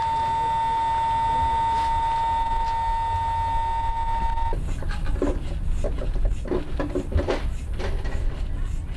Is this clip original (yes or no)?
yes